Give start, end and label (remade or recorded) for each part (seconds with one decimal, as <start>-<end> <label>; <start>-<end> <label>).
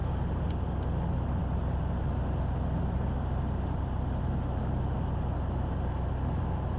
0.0-6.8 recorded